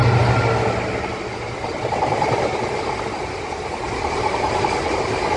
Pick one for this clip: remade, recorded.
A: recorded